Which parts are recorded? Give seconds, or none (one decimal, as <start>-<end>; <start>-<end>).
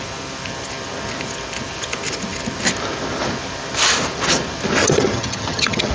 0.0-4.8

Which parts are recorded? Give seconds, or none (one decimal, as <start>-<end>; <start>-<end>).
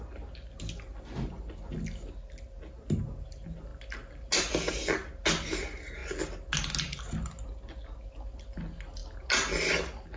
0.0-10.2